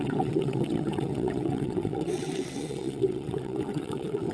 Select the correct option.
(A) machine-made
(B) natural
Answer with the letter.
A